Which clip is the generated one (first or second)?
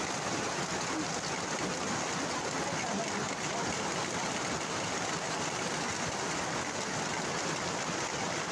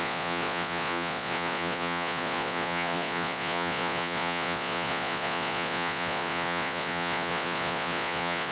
second